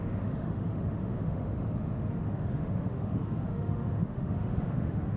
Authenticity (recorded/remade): remade